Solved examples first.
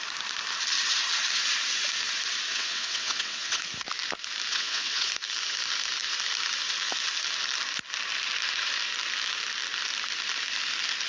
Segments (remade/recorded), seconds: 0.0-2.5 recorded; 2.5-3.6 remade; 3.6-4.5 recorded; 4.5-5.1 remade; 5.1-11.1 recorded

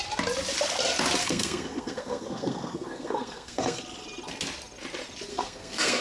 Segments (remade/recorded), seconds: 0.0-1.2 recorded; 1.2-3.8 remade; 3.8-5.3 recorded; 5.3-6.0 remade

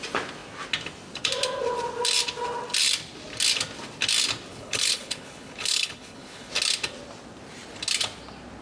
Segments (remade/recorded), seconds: 0.0-4.5 recorded; 4.5-6.5 remade; 6.5-8.6 recorded